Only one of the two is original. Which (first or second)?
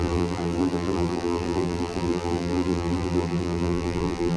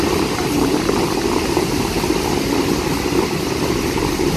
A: second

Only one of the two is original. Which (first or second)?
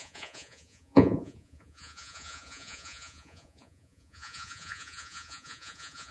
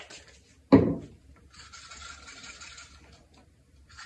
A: second